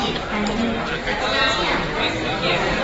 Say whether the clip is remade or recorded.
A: recorded